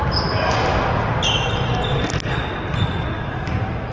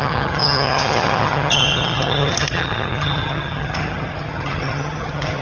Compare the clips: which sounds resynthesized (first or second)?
second